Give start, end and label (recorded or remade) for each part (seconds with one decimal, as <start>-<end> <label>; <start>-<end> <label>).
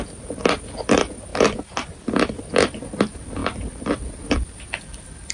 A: 0.0-1.3 remade; 1.3-2.4 recorded; 2.4-5.3 remade